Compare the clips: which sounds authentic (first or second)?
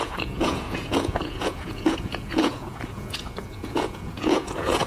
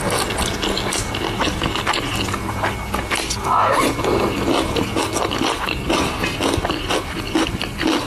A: second